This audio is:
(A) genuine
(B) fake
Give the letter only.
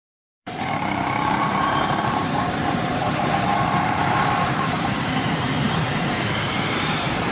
B